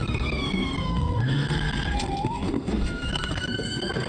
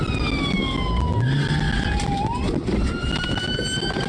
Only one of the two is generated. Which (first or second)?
first